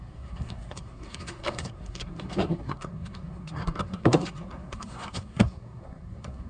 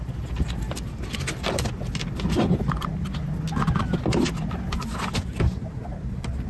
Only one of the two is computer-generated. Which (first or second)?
first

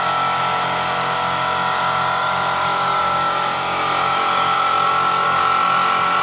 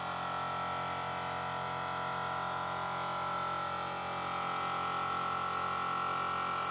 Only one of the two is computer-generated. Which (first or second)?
first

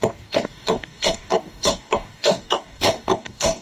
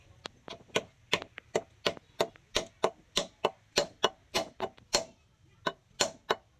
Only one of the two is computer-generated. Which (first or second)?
first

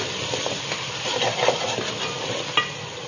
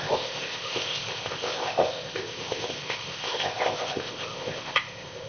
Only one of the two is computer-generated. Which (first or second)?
second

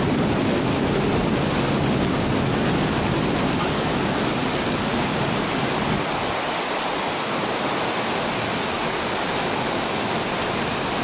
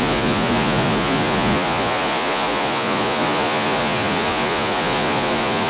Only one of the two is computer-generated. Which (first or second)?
second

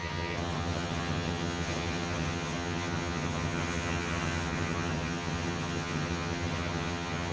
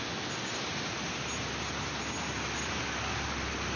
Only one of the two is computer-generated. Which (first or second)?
first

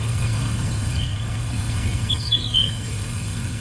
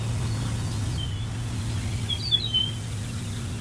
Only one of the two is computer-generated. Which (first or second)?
first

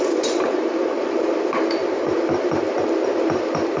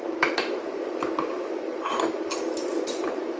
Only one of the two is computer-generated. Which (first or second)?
first